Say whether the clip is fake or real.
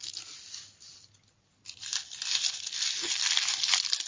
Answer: real